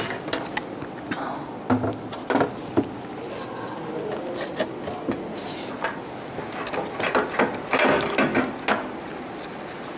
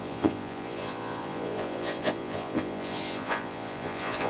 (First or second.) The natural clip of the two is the first